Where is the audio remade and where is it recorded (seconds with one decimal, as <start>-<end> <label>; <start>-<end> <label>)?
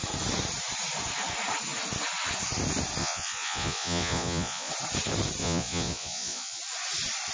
0.0-3.0 recorded; 3.0-4.7 remade; 4.7-5.4 recorded; 5.4-6.6 remade; 6.6-7.3 recorded